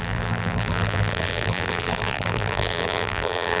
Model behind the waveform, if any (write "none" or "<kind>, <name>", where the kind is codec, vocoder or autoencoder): vocoder, BigVGAN v2